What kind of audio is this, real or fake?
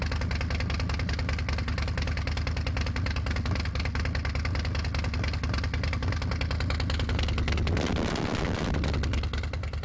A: real